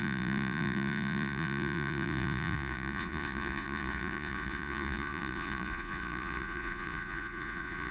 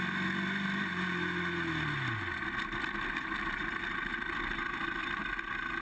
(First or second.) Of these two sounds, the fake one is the first